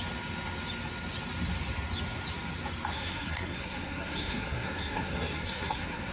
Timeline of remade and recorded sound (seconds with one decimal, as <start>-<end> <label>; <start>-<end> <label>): 0.0-2.9 recorded; 2.9-6.1 remade